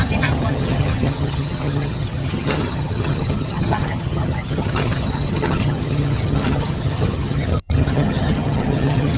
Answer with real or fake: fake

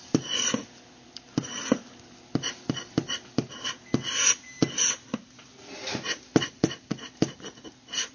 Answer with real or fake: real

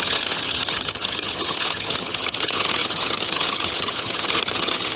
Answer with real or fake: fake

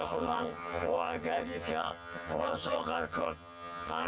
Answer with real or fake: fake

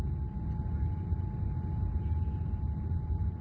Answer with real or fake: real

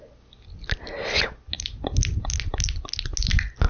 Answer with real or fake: real